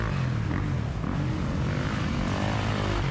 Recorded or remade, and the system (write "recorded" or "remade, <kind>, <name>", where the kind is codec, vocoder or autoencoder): recorded